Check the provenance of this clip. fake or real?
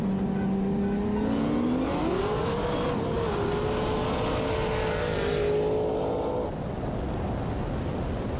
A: real